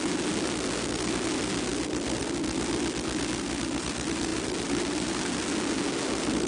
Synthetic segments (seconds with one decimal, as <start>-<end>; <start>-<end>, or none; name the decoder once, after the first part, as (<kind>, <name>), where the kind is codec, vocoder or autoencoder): none